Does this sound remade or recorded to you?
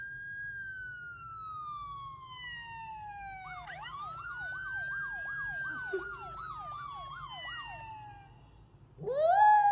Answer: recorded